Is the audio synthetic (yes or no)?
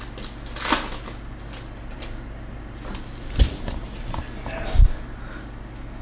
no